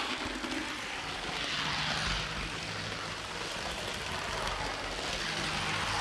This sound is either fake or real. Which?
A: real